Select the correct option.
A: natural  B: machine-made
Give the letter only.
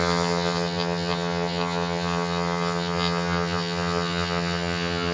B